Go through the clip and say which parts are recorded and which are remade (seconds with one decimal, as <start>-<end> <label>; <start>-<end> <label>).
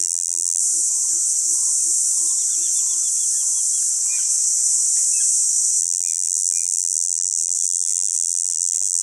0.0-0.6 remade; 0.6-5.8 recorded; 5.8-9.0 remade